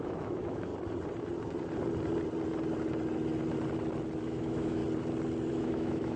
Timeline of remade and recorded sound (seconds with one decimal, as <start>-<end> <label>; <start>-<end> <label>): 0.0-0.7 remade; 0.7-4.2 recorded; 4.2-4.8 remade; 4.8-5.5 recorded; 5.5-6.2 remade